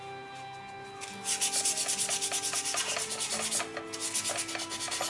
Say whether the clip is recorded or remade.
recorded